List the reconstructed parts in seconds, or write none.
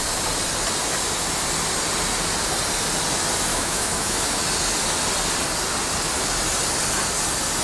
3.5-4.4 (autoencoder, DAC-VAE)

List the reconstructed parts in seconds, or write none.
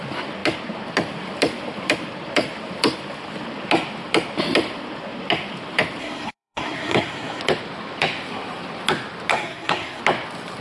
6.0-7.4 (codec, SNAC); 9.3-10.0